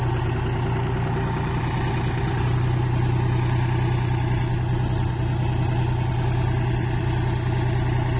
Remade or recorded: recorded